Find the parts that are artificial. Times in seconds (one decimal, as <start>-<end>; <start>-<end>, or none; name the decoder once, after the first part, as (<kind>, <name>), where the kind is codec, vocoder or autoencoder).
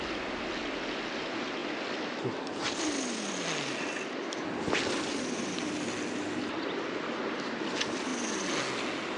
none